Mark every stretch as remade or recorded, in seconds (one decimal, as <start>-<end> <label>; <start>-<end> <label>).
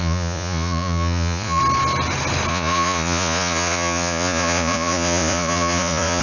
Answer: 0.0-1.6 remade; 1.6-2.5 recorded; 2.5-6.2 remade